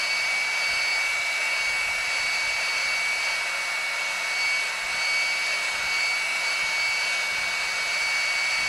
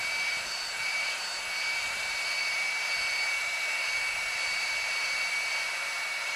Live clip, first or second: first